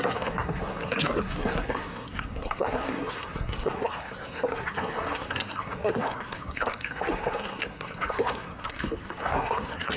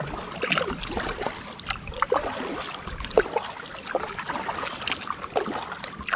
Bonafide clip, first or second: second